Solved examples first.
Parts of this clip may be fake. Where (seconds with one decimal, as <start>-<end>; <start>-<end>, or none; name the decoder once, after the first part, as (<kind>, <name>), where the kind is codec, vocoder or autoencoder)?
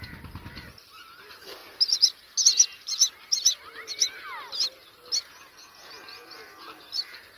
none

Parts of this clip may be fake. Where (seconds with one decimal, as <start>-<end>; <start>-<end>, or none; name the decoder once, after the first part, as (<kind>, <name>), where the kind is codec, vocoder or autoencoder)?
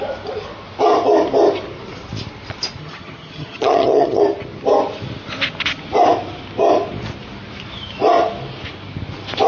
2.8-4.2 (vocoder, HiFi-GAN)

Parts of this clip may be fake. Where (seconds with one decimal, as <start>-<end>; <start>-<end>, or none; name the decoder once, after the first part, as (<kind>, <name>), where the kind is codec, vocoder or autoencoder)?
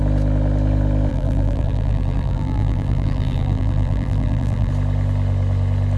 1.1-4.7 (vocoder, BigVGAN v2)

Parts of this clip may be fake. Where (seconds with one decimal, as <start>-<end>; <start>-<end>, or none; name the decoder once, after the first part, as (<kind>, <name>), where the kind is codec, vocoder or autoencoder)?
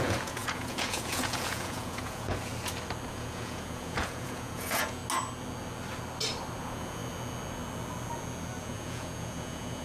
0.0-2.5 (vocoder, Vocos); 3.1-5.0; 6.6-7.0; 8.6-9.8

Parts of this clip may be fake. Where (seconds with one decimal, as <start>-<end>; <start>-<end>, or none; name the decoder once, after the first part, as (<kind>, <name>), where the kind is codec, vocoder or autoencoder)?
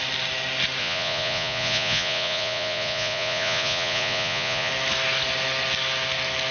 0.8-4.7 (vocoder, Vocos)